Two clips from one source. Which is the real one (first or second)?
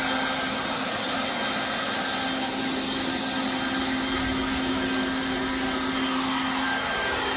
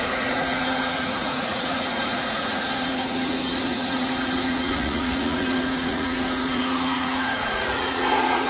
first